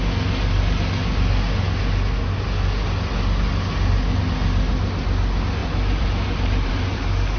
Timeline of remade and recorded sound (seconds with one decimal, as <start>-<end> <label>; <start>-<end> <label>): 0.0-5.6 recorded; 5.6-6.7 remade; 6.7-7.4 recorded